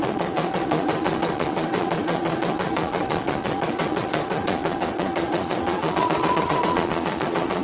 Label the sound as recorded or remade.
remade